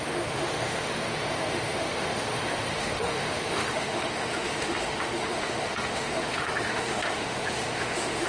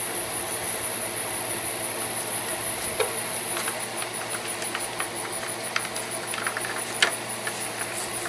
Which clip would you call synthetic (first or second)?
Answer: first